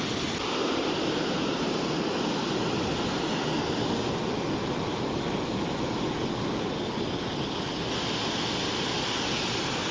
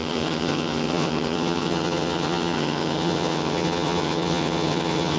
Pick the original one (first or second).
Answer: first